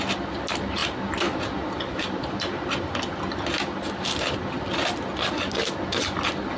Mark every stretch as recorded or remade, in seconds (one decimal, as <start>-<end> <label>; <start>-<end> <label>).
0.0-6.6 recorded